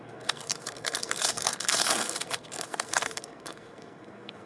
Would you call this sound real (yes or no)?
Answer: no